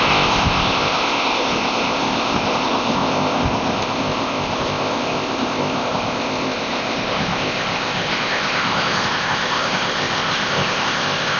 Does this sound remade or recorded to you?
remade